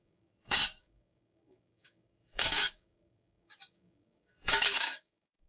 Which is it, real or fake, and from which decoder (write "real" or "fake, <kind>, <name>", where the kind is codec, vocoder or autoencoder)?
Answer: fake, codec, DAC